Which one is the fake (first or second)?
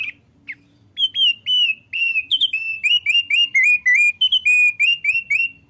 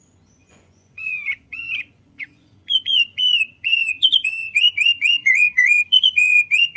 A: second